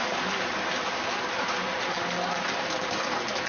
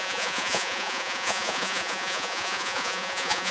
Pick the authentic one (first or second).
first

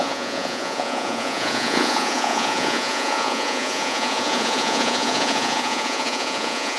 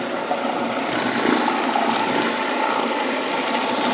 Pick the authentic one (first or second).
second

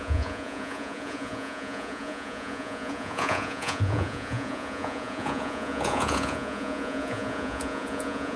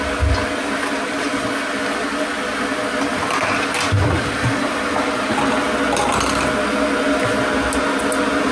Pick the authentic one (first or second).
second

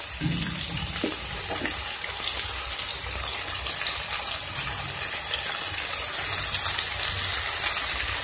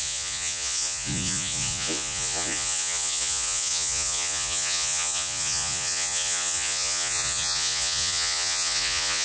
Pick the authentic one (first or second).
first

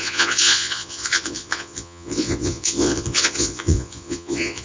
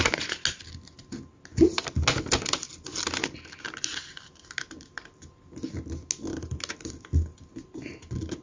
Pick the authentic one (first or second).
second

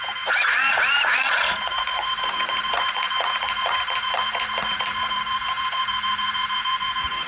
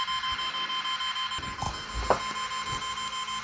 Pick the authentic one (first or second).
second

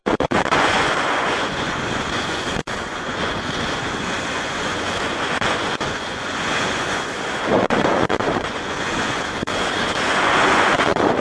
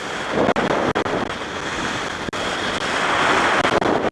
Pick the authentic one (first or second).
second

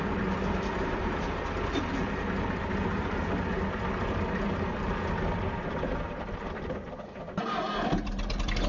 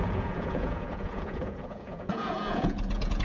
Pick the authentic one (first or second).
first